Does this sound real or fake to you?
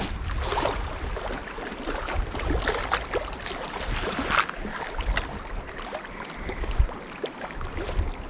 real